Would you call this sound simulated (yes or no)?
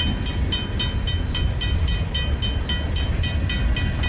no